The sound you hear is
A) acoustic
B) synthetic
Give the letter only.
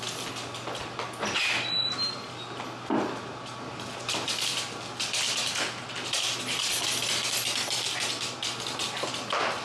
A